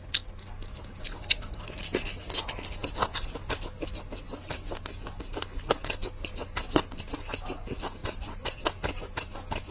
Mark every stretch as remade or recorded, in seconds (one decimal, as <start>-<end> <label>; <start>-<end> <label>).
0.0-9.7 recorded